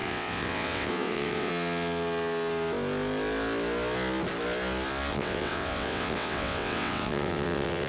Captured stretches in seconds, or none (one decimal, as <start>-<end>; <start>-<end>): 1.5-5.1